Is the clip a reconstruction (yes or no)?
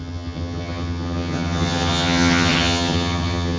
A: yes